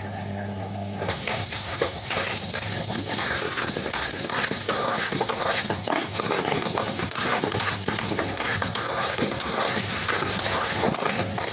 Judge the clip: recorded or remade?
remade